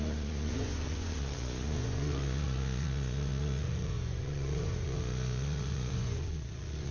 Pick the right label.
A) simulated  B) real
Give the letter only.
A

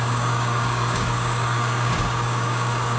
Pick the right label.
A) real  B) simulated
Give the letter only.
B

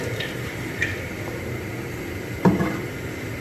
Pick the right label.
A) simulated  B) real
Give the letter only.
A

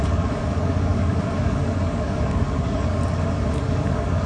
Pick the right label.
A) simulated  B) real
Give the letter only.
A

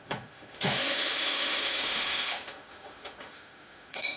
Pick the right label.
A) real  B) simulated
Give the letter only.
B